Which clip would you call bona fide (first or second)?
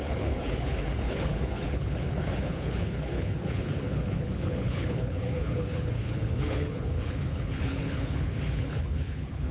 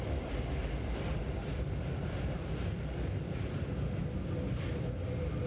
second